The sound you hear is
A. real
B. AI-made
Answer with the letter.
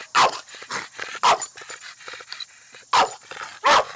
A